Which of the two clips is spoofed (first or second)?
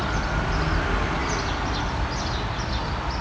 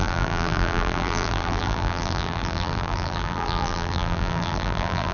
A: second